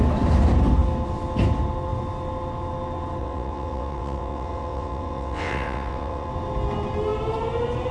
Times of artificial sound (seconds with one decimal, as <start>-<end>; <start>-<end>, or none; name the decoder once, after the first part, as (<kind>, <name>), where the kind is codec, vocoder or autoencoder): 3.2-6.3 (vocoder, WaveNeXt)